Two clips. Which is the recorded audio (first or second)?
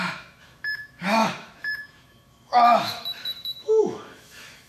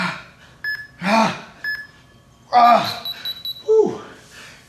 second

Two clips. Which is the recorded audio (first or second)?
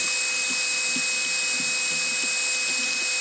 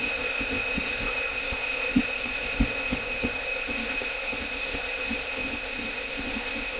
first